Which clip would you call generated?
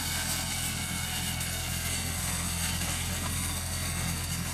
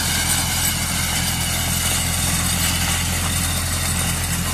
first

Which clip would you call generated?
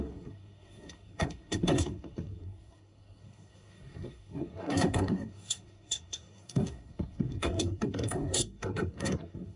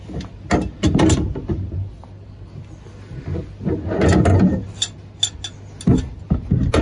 first